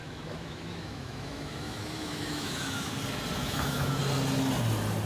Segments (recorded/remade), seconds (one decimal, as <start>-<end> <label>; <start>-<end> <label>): 0.0-2.9 remade; 2.9-3.4 recorded; 3.4-4.0 remade; 4.0-5.1 recorded